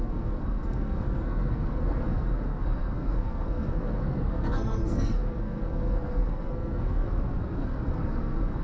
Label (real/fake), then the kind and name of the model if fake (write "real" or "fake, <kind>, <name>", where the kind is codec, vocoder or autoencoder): fake, codec, SNAC